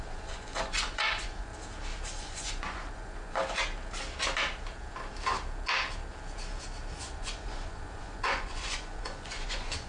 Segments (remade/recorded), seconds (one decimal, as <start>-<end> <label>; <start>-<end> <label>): 0.0-1.5 remade; 1.5-2.2 recorded; 2.2-3.4 remade; 3.4-7.0 recorded; 7.0-9.9 remade